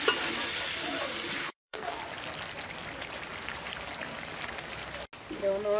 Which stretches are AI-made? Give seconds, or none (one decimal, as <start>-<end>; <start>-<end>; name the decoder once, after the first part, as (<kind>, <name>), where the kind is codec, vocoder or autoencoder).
1.4-2.0 (codec, SNAC)